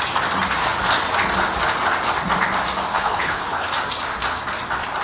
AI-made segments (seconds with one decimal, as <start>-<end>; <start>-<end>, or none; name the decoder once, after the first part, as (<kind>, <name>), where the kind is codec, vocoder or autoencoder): 2.9-3.7 (codec, HILCodec)